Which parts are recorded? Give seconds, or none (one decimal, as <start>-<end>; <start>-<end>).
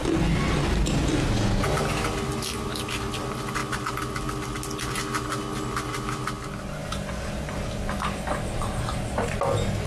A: 0.0-9.9